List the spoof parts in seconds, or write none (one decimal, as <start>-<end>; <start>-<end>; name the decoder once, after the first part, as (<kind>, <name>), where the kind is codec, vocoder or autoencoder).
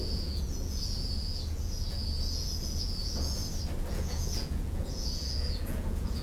0.0-3.4 (vocoder, Vocos); 3.9-6.2